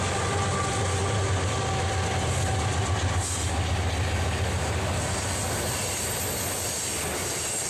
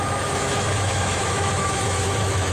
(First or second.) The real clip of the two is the first